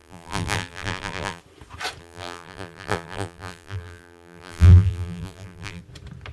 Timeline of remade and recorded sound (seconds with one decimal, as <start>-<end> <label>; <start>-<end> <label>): 0.0-1.4 remade; 1.4-2.0 recorded; 2.0-5.8 remade; 5.8-6.3 recorded